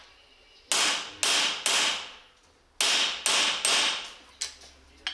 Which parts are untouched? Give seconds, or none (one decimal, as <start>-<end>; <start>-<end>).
0.0-5.1